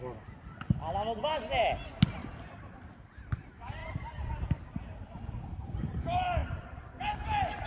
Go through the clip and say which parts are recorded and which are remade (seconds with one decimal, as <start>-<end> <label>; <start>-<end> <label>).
0.0-2.2 recorded; 2.2-2.7 remade; 2.7-3.8 recorded; 3.8-4.3 remade; 4.3-6.4 recorded; 6.4-7.0 remade; 7.0-7.7 recorded